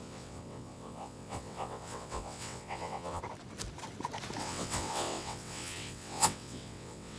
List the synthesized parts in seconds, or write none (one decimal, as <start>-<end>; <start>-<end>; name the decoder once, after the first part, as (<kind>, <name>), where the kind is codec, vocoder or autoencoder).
0.0-3.2 (vocoder, WaveNeXt); 4.4-7.2